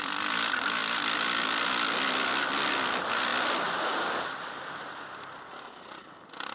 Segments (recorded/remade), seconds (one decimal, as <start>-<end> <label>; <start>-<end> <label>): 0.0-6.5 recorded